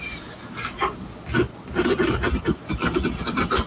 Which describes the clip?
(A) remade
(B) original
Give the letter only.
B